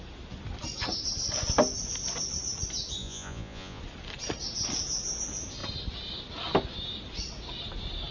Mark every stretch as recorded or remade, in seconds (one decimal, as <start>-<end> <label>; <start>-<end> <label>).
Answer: 0.0-3.0 recorded; 3.0-3.8 remade; 3.8-8.1 recorded